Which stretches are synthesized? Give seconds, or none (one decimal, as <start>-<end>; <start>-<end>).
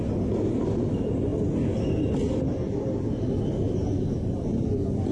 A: none